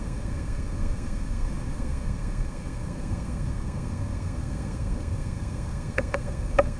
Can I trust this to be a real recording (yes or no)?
no